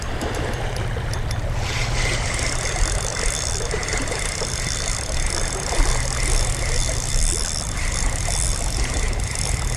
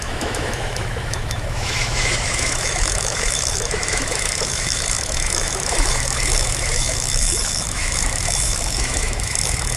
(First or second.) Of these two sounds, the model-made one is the second